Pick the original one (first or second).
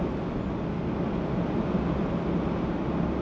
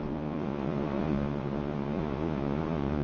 first